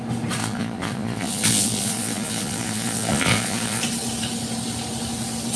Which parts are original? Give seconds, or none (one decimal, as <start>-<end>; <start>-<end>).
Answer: 0.0-0.4; 3.8-5.6